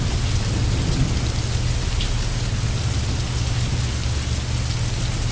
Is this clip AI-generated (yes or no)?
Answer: no